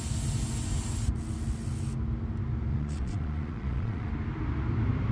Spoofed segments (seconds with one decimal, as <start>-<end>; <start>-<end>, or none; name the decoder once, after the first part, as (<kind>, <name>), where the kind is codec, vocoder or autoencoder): 2.7-4.1 (vocoder, Vocos)